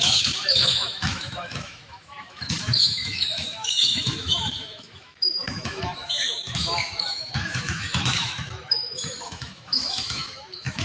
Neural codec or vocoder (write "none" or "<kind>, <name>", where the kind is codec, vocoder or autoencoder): autoencoder, DAC-VAE